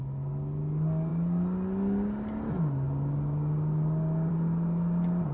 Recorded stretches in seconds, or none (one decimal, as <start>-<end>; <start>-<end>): 0.0-5.3